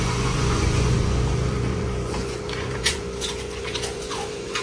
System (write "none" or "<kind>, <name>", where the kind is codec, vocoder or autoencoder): vocoder, Vocos